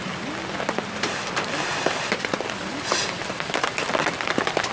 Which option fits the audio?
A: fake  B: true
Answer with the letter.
A